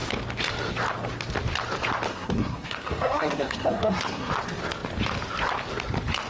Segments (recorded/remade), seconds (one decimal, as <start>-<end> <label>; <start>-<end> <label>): 0.0-2.1 recorded; 2.1-4.3 remade; 4.3-6.3 recorded